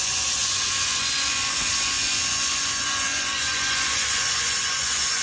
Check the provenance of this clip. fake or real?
fake